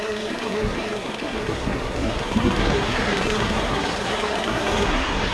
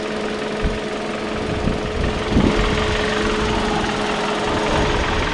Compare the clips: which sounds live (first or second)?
second